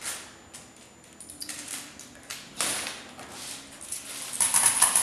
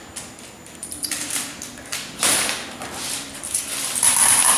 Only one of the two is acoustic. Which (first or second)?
first